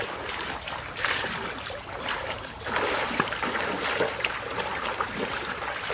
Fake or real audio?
fake